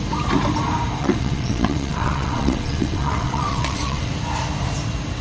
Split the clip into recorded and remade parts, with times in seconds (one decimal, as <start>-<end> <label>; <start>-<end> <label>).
0.0-1.0 recorded; 1.0-4.1 remade; 4.1-5.2 recorded